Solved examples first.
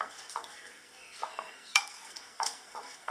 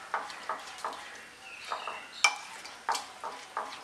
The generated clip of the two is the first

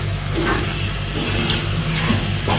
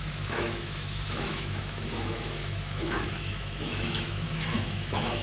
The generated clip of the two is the second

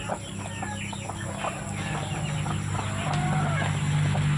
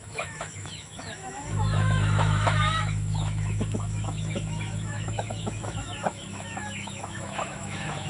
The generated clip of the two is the second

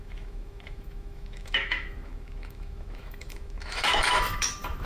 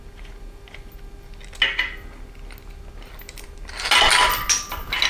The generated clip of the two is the first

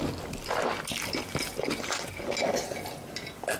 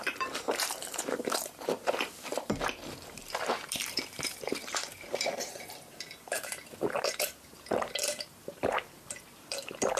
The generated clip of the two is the second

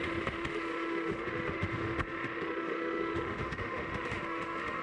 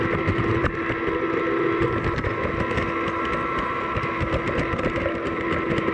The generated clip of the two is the first